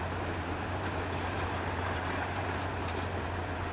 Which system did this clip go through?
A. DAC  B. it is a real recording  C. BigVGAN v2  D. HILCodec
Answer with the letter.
C